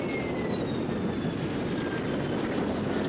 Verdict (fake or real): real